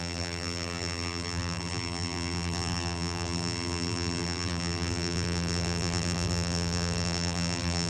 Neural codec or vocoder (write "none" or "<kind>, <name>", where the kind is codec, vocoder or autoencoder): vocoder, BigVGAN v2